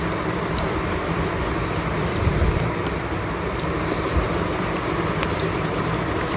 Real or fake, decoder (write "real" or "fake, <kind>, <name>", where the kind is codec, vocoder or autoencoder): fake, vocoder, BigVGAN v2